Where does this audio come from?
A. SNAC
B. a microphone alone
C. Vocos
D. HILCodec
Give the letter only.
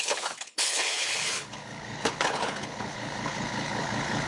D